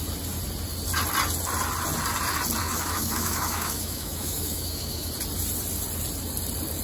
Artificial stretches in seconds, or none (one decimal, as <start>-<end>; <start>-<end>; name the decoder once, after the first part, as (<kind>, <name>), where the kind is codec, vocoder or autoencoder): 2.6-5.1 (autoencoder, DAC-VAE)